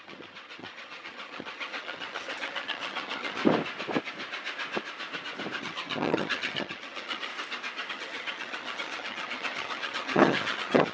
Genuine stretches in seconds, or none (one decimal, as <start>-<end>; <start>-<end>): 3.4-5.6; 7.3-7.9